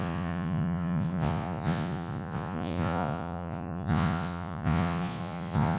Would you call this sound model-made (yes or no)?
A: yes